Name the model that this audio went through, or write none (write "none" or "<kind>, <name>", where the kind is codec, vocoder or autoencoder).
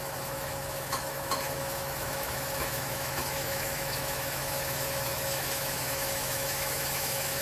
autoencoder, DAC-VAE